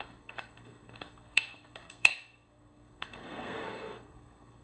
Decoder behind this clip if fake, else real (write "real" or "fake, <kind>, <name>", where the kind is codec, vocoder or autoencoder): fake, codec, SNAC